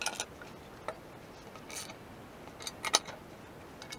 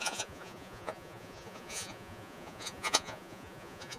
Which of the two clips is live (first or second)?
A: first